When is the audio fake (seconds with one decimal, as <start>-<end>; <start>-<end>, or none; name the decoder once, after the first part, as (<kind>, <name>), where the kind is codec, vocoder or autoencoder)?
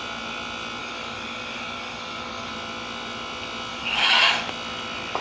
0.8-2.5 (codec, DAC); 3.7-4.5